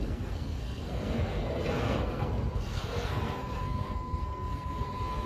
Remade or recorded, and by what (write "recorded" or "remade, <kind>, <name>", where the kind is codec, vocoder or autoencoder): remade, codec, SNAC